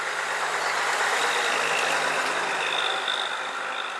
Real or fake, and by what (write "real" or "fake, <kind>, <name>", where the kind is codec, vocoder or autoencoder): real